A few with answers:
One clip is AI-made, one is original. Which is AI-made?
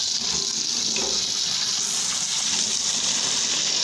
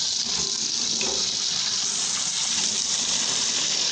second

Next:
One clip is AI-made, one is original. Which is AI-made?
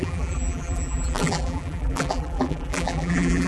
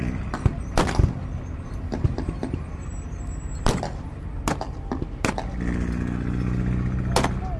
first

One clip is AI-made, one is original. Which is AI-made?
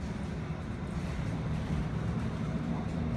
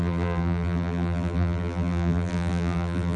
second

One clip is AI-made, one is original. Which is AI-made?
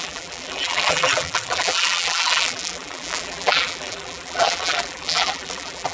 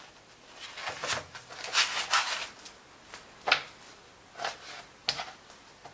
first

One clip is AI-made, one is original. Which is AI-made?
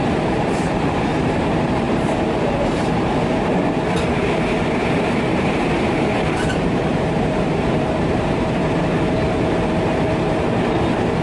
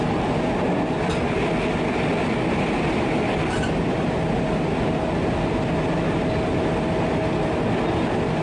first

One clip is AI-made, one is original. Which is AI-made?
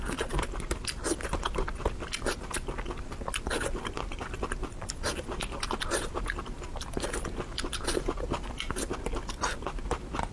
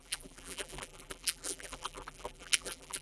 second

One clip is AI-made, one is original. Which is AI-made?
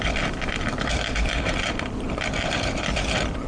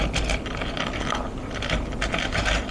first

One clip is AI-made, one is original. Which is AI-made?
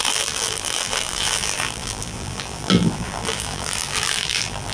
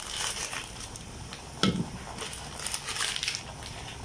first